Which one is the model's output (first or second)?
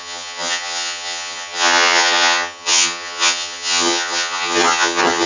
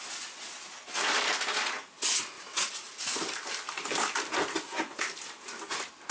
first